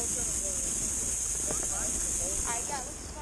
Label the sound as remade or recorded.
recorded